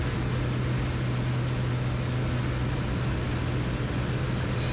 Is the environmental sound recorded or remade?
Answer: recorded